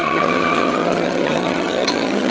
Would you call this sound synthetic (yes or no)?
yes